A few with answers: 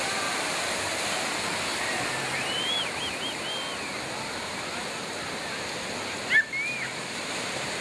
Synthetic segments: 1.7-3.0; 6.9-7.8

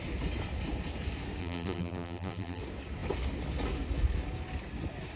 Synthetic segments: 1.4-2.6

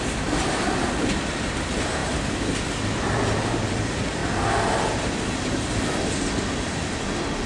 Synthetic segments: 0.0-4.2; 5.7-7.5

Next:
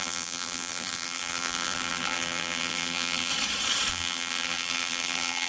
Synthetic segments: 0.0-3.3; 3.9-5.5